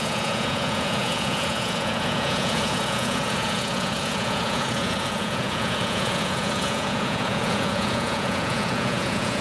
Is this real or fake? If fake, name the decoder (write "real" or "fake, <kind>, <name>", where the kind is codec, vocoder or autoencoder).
fake, vocoder, Vocos